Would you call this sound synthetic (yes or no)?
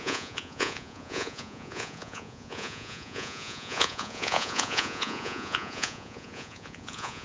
yes